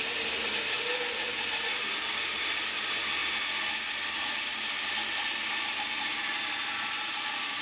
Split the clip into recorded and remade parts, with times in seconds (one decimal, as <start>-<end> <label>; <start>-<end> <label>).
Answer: 0.0-7.6 recorded

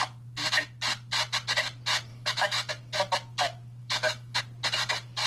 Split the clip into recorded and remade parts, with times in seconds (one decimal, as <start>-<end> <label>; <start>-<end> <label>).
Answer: 0.0-2.1 recorded; 2.1-2.7 remade; 2.7-3.8 recorded; 3.8-4.4 remade; 4.4-5.3 recorded

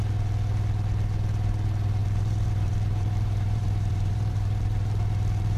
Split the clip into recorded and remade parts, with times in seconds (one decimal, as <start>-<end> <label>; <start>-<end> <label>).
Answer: 0.0-2.0 recorded; 2.0-5.6 remade

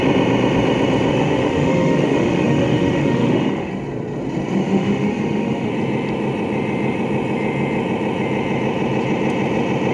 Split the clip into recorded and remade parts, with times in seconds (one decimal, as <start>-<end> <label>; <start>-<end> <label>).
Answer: 0.0-1.1 recorded; 1.1-3.7 remade; 3.7-4.6 recorded; 4.6-5.7 remade; 5.7-9.9 recorded